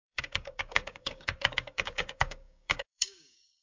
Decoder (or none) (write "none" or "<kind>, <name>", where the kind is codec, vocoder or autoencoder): codec, DAC